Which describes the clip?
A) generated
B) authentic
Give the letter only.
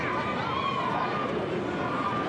B